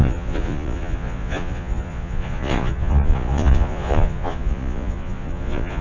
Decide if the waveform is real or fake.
fake